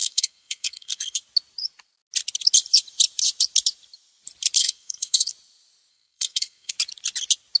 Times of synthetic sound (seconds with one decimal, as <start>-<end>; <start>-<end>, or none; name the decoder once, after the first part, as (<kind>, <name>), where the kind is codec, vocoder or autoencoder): 0.0-1.2 (codec, SNAC); 4.6-5.3; 5.9-6.7